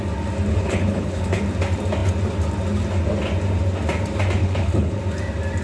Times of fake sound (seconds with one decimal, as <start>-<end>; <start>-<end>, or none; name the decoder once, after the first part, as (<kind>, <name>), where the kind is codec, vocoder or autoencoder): 0.5-1.4 (codec, HILCodec); 4.4-5.0